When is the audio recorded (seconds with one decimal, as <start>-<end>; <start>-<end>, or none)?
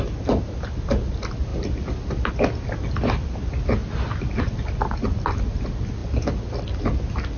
0.0-7.4